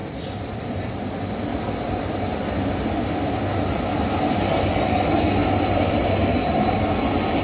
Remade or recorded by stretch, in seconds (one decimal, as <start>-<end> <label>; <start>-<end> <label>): 0.0-0.9 remade; 0.9-1.5 recorded; 1.5-2.9 remade; 2.9-5.4 recorded; 5.4-6.0 remade; 6.0-7.4 recorded